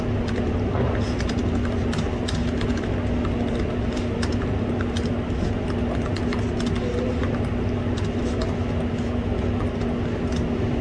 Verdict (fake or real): real